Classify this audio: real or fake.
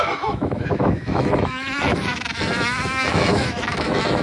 fake